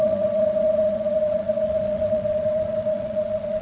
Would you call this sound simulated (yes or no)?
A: yes